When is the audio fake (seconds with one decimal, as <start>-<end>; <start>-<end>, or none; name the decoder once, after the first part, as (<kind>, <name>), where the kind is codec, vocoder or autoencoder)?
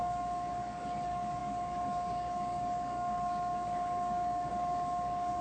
0.0-5.4 (codec, DAC)